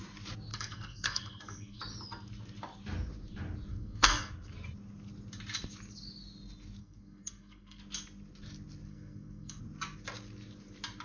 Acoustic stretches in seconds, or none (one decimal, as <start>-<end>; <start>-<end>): 0.0-0.5; 1.8-3.7; 4.3-6.8; 7.8-8.9; 9.6-11.0